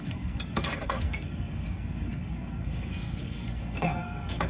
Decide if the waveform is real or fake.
fake